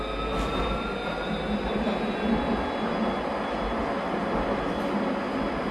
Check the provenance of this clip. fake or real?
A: real